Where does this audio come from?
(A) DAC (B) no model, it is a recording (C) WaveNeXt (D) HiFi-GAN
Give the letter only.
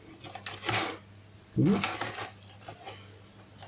B